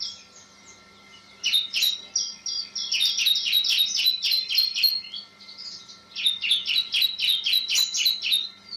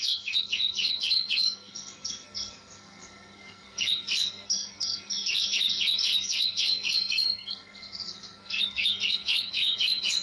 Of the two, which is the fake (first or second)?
second